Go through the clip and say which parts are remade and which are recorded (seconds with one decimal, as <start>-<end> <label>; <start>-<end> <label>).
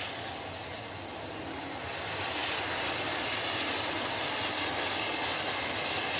0.0-6.2 recorded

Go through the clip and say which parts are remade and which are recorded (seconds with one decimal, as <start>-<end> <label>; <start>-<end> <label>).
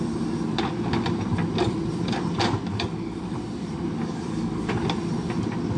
0.0-2.7 recorded; 2.7-3.2 remade; 3.2-4.0 recorded; 4.0-4.7 remade; 4.7-5.8 recorded